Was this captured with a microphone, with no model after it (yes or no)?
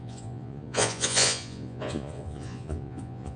no